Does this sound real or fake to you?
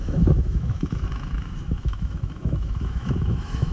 fake